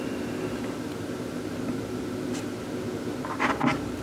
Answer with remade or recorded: recorded